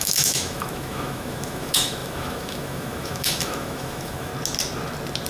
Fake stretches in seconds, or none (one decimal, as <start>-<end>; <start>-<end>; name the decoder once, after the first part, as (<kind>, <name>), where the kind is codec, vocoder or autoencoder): 0.0-4.3 (autoencoder, DAC-VAE)